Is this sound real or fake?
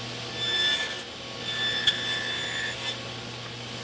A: real